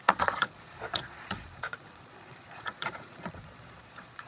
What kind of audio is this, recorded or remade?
remade